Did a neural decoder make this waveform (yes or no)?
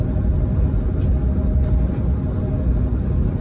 no